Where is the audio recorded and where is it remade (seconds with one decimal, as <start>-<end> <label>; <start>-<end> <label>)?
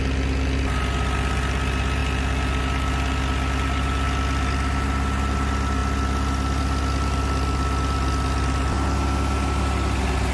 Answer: 0.0-10.3 recorded